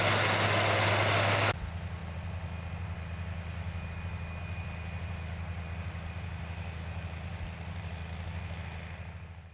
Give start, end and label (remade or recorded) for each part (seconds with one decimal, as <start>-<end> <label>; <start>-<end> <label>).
0.0-9.5 recorded

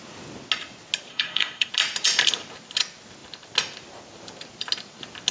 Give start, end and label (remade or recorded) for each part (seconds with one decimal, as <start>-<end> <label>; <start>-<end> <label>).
0.0-1.1 recorded; 1.1-1.7 remade; 1.7-5.3 recorded